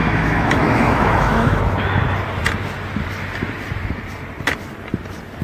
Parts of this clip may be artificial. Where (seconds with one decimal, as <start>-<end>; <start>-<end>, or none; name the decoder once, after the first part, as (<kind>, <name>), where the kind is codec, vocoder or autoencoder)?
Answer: 0.0-1.6 (autoencoder, DAC-VAE)